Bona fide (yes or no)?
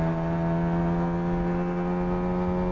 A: yes